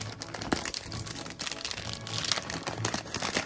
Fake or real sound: real